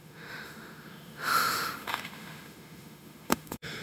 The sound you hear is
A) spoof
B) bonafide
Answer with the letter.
A